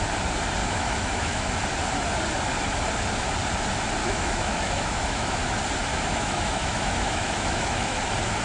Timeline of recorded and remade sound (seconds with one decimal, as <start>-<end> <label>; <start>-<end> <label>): 0.0-0.6 recorded; 0.6-1.5 remade; 1.5-4.0 recorded; 4.0-5.4 remade; 5.4-5.9 recorded; 5.9-8.0 remade; 8.0-8.4 recorded